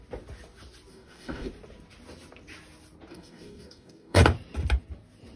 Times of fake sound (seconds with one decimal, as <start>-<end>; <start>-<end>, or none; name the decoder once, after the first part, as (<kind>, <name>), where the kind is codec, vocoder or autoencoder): 0.9-1.5 (codec, DAC); 3.1-4.2